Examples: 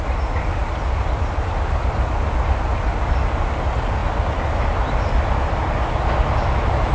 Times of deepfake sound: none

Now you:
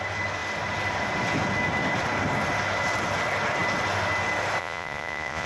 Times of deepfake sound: 4.6-5.5 (vocoder, Vocos)